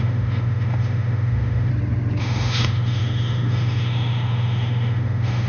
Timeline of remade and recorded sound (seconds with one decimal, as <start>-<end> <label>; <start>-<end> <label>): 0.0-1.7 remade; 1.7-2.2 recorded; 2.2-5.5 remade